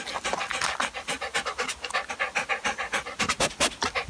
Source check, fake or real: real